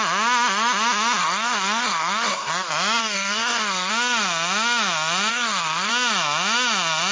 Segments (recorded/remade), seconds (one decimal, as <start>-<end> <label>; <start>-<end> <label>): 0.0-1.2 recorded; 1.2-2.5 remade; 2.5-3.0 recorded; 3.0-3.9 remade; 3.9-5.3 recorded; 5.3-5.9 remade; 5.9-7.1 recorded